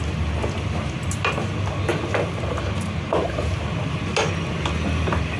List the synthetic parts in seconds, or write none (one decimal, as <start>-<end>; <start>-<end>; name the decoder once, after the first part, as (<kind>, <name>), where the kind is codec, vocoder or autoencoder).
1.9-3.6 (vocoder, BigVGAN v2)